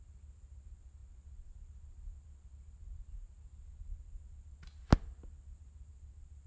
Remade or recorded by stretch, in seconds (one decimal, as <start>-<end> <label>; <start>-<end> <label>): 0.0-6.5 recorded